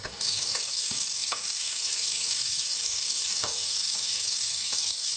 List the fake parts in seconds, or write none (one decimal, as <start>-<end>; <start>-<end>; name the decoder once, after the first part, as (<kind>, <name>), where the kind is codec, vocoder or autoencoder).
0.0-5.2 (codec, DAC)